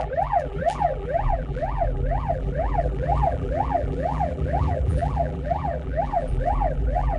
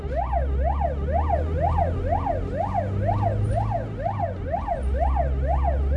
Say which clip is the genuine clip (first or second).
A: second